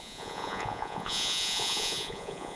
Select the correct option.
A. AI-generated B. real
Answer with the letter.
A